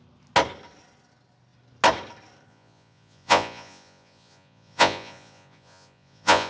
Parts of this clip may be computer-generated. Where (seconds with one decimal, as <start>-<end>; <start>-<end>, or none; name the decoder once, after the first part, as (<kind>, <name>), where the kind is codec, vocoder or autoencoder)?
2.5-6.5 (vocoder, Vocos)